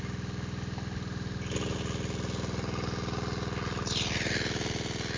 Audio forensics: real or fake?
real